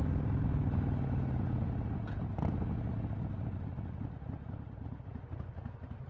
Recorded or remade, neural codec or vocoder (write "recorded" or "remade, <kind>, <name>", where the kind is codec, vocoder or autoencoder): recorded